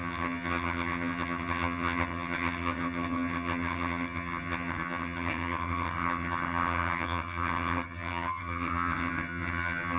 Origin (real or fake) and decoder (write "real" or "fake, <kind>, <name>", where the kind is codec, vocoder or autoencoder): fake, vocoder, HiFi-GAN